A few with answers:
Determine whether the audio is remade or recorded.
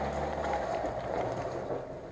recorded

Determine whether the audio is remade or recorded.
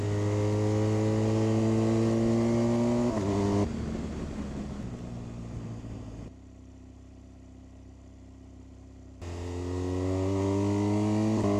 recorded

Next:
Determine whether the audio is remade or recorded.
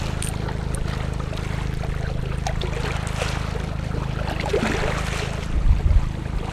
recorded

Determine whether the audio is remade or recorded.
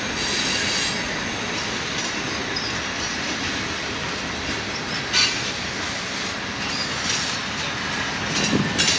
recorded